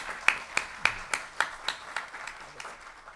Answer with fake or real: real